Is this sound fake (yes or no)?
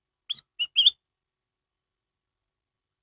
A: no